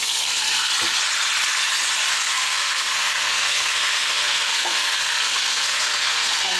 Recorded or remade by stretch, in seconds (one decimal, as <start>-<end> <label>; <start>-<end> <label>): 0.0-0.7 remade; 0.7-2.1 recorded; 2.1-6.6 remade